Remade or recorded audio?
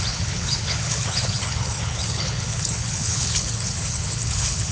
remade